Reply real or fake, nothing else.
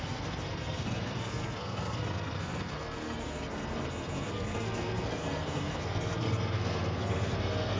fake